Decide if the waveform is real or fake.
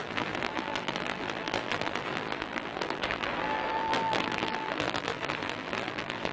fake